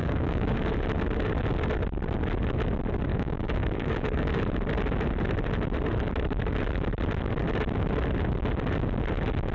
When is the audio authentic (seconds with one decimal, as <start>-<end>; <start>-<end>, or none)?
0.6-3.1; 4.4-9.5